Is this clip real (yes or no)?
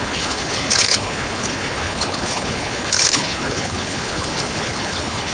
no